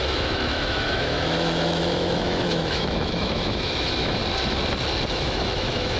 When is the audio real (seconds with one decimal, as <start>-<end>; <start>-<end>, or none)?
4.2-5.1